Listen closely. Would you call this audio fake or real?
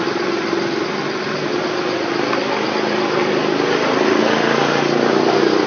real